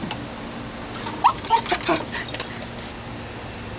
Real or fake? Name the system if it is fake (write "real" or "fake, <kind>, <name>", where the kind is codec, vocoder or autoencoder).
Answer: real